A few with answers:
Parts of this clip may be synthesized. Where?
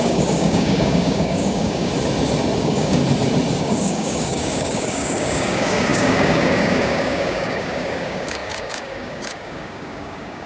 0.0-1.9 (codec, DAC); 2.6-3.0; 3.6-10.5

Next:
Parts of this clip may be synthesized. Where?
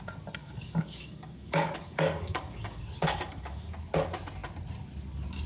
0.4-3.7 (codec, DAC)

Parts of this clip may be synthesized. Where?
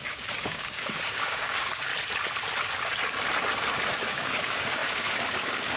0.0-1.9 (codec, DAC); 3.9-5.8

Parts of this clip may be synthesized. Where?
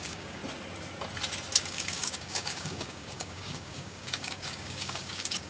0.0-0.4 (codec, DAC); 1.6-5.5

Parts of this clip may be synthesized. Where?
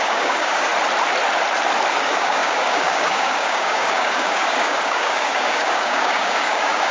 0.0-0.7 (codec, DAC); 2.0-6.9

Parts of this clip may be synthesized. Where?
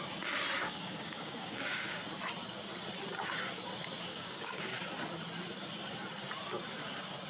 0.6-2.0 (codec, DAC); 4.1-4.8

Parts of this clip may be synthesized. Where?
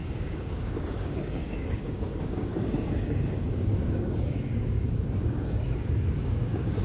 0.0-6.8 (codec, DAC)